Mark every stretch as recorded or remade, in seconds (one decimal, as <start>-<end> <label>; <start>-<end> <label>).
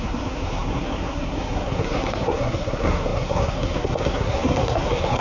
0.0-5.2 remade